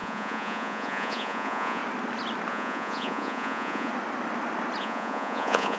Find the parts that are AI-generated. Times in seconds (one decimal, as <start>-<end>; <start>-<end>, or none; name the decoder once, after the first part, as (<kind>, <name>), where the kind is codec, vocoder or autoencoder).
0.0-1.8 (vocoder, Vocos); 2.5-3.9; 4.8-5.8